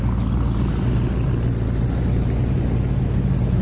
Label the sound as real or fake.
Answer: real